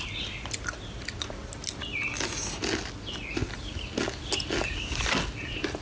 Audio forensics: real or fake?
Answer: real